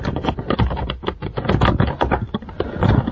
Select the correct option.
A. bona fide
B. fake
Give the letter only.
A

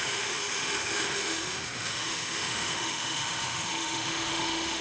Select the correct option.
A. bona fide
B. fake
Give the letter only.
B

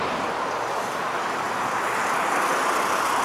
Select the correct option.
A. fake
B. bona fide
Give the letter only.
B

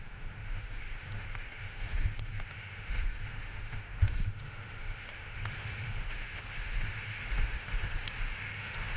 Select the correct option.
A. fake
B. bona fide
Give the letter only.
A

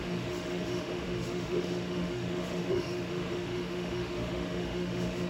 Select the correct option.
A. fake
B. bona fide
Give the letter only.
A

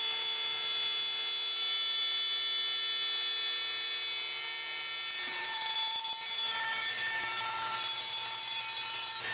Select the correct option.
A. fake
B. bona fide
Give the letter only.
B